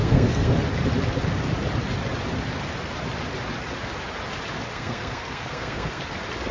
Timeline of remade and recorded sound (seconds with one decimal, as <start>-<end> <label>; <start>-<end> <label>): 0.0-0.5 remade; 0.5-4.7 recorded; 4.7-6.0 remade; 6.0-6.5 recorded